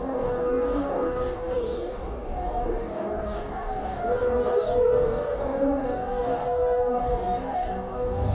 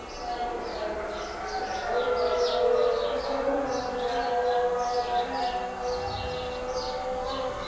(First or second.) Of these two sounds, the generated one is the first